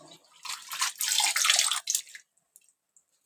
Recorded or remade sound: recorded